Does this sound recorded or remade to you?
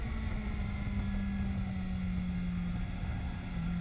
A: recorded